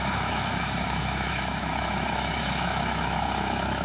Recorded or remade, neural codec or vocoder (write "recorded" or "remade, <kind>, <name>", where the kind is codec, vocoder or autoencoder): remade, autoencoder, DAC-VAE